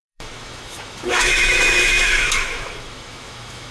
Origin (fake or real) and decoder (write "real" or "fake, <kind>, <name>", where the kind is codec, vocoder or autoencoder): fake, autoencoder, DAC-VAE